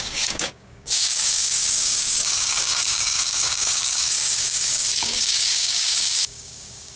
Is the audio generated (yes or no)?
yes